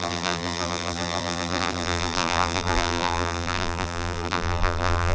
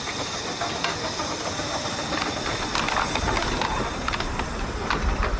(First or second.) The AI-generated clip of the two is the first